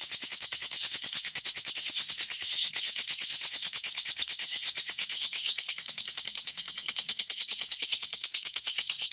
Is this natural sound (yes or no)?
no